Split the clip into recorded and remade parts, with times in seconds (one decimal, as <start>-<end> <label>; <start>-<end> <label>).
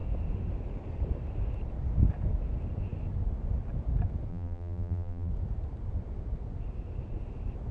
0.0-4.3 recorded; 4.3-5.3 remade; 5.3-7.7 recorded